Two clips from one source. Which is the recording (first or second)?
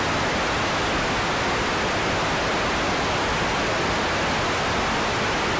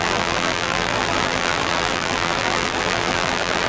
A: first